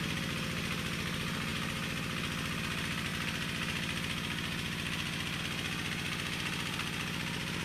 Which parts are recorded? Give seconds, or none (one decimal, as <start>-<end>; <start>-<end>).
0.0-7.6